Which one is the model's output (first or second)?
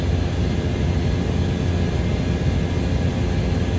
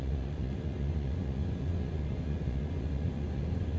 second